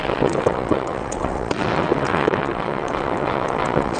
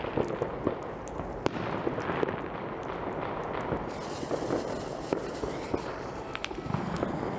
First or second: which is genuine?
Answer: second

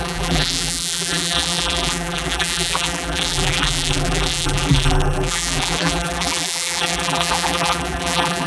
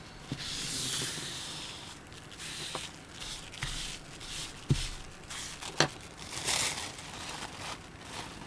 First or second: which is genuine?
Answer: second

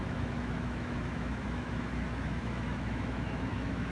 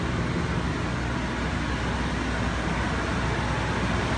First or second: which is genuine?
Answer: second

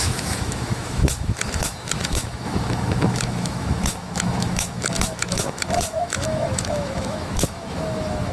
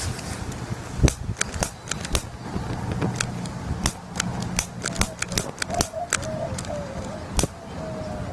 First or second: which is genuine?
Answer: second